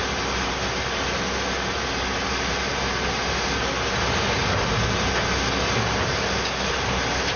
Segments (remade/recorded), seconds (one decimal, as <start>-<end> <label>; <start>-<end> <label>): 0.0-7.4 recorded